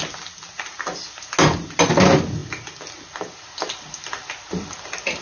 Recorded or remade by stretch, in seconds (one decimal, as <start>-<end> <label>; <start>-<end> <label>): 0.0-5.2 recorded

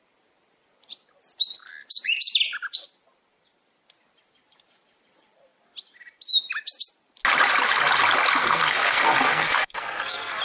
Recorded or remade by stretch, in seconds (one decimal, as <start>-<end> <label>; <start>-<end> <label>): 0.0-8.4 recorded; 8.4-10.4 remade

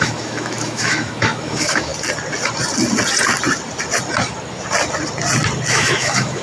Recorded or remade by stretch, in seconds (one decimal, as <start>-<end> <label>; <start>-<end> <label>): 0.0-1.9 remade; 1.9-5.7 recorded; 5.7-6.4 remade

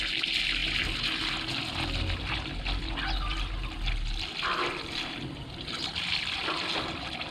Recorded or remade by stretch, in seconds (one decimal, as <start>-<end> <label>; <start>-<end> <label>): 0.0-7.3 recorded

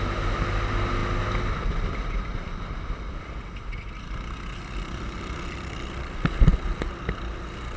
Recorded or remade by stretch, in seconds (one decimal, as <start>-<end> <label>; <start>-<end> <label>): 0.0-7.8 recorded

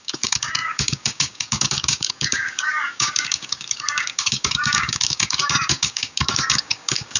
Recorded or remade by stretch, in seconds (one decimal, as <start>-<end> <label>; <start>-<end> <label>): 0.0-7.2 remade

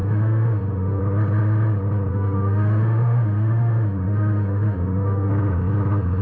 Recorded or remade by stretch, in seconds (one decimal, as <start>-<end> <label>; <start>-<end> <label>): 0.0-1.0 remade; 1.0-2.1 recorded; 2.1-5.3 remade; 5.3-6.2 recorded